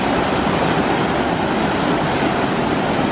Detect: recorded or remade recorded